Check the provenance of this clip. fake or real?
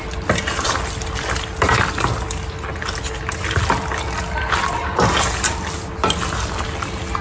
real